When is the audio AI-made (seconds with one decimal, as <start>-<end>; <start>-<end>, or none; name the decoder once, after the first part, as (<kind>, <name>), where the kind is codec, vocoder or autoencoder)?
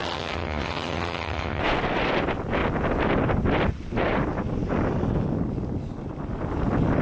0.0-1.6 (vocoder, HiFi-GAN)